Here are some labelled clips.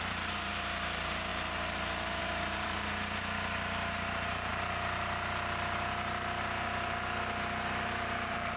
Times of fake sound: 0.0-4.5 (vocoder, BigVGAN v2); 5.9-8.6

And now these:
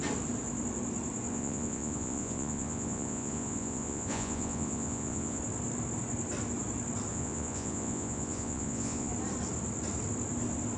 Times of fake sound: 1.3-5.4 (vocoder, Vocos); 7.1-9.1